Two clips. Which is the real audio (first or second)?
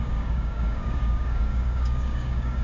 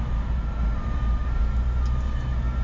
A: second